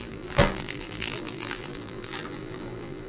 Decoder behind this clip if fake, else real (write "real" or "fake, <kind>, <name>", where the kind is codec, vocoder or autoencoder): fake, vocoder, BigVGAN v2